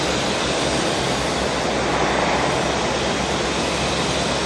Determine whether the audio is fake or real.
real